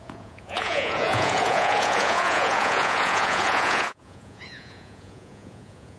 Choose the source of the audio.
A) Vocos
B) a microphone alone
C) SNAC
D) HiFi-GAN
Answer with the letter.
A